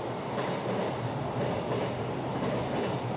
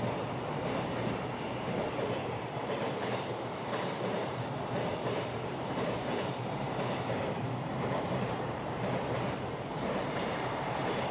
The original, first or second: first